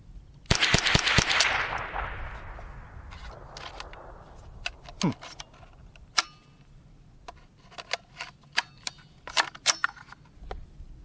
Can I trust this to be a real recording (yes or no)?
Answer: yes